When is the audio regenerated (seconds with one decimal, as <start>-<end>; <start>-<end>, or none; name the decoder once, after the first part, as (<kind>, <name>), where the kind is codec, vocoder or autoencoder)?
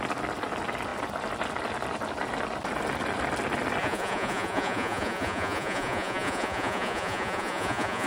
3.8-8.1 (vocoder, Vocos)